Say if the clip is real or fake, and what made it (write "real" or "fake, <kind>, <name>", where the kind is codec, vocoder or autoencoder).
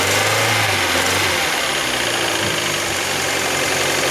real